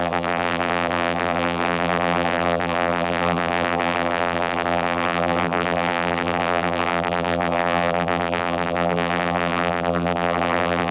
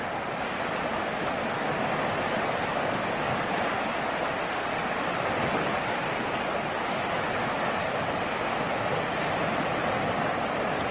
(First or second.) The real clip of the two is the second